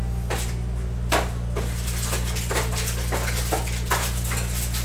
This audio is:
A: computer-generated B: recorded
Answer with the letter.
B